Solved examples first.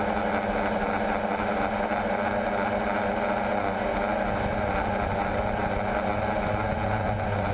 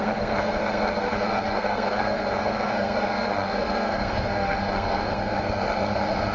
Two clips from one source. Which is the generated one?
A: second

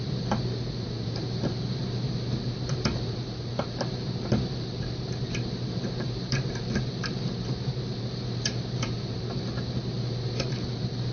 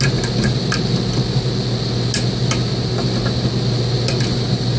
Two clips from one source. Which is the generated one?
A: first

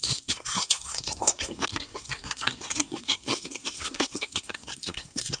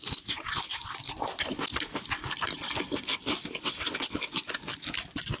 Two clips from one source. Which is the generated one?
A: first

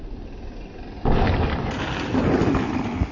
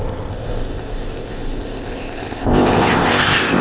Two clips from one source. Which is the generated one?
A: second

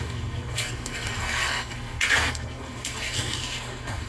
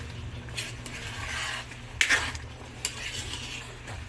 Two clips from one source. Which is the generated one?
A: first